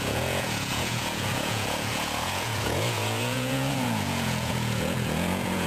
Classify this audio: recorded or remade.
remade